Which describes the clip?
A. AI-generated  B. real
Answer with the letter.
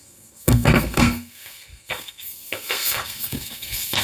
A